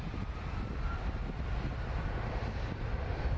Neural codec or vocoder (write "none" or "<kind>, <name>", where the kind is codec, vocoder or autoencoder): none